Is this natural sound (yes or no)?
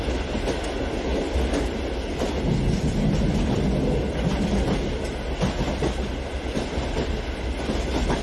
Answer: yes